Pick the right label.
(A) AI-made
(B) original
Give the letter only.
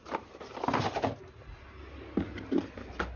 B